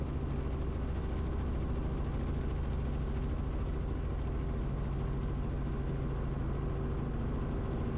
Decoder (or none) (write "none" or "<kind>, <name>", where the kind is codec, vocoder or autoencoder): none